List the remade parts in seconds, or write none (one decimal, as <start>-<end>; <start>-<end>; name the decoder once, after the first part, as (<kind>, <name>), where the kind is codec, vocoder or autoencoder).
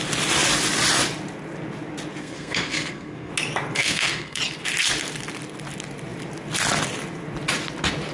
2.2-3.3 (codec, SNAC); 3.8-4.4